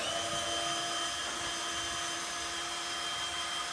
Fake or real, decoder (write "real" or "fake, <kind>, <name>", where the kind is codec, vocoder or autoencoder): real